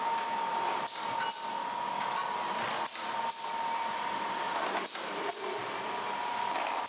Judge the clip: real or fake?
real